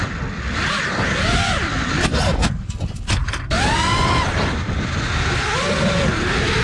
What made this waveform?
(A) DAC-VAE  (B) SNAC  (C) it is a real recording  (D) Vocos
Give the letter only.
C